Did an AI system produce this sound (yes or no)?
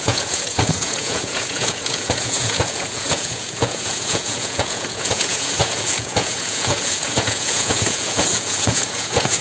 yes